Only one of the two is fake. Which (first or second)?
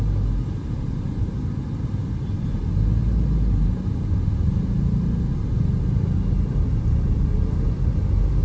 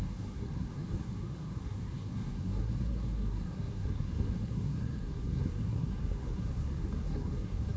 second